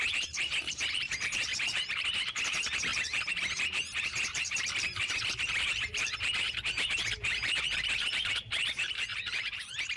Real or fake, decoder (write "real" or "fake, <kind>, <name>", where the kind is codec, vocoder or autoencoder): fake, vocoder, BigVGAN v2